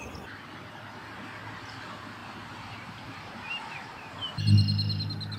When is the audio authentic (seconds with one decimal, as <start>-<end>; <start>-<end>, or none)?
0.0-2.2; 4.1-5.4